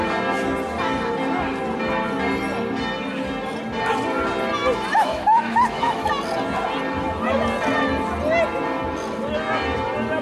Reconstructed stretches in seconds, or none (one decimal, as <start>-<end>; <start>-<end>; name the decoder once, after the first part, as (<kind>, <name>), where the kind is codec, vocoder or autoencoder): 4.9-6.1 (autoencoder, DAC-VAE)